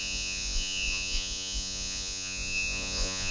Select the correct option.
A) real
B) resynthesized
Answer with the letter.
B